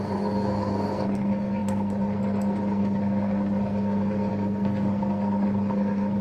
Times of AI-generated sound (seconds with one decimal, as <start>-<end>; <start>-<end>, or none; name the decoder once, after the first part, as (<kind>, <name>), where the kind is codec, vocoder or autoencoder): 0.0-6.2 (codec, SNAC)